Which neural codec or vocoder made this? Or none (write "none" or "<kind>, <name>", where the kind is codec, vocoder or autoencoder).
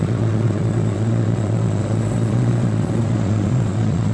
vocoder, Vocos